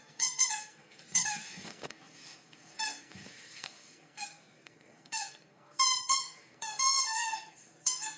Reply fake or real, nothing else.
fake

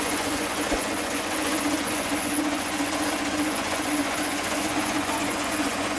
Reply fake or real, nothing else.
fake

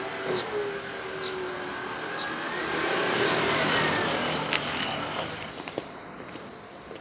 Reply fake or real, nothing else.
fake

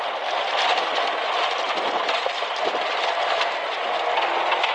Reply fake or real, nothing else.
real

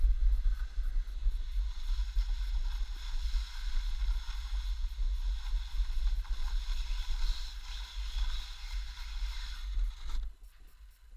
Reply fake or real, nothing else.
real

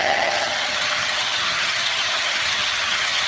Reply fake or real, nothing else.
fake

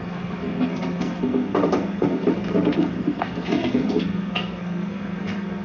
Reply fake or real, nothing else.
fake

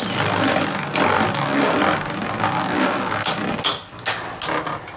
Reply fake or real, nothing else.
real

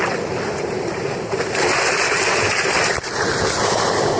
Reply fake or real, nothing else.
real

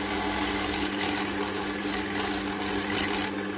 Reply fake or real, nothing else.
real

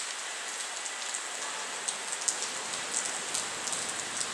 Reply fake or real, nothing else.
real